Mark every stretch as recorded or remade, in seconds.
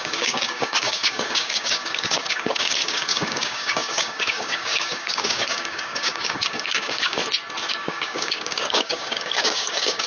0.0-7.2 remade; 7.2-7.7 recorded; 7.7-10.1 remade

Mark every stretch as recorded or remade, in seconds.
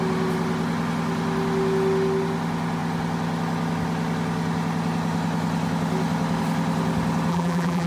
0.0-7.3 recorded; 7.3-7.9 remade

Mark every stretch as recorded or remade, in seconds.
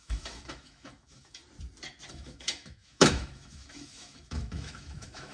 0.0-1.4 remade; 1.4-2.1 recorded; 2.1-5.3 remade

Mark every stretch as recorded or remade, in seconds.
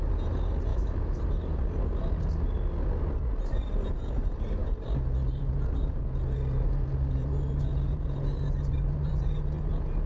0.0-0.7 recorded; 0.7-1.2 remade; 1.2-10.1 recorded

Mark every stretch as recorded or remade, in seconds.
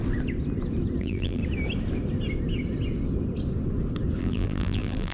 0.0-1.0 recorded; 1.0-1.4 remade; 1.4-4.2 recorded; 4.2-5.1 remade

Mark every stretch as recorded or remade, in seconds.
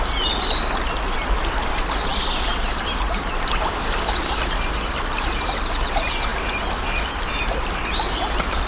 0.0-8.7 recorded